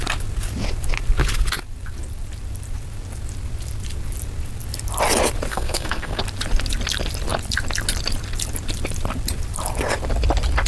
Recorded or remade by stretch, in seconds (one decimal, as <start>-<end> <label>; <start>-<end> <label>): 0.0-5.5 recorded; 5.5-6.2 remade; 6.2-10.7 recorded